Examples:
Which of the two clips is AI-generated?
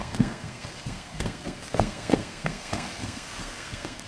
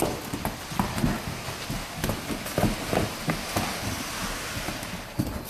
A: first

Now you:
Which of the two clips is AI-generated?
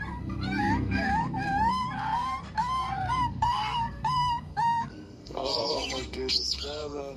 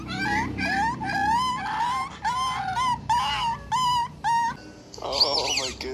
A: first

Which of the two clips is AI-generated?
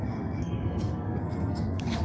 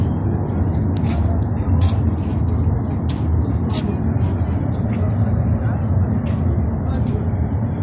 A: first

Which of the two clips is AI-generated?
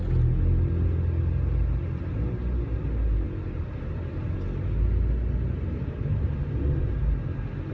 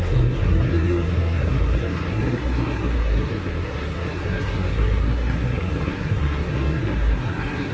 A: second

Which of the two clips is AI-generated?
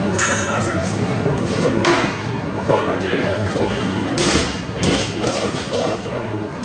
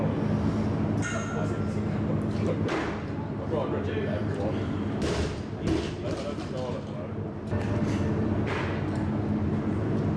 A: first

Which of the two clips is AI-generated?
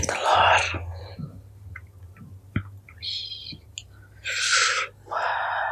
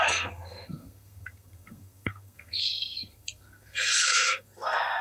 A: second